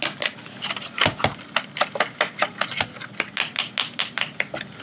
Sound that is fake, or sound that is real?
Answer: real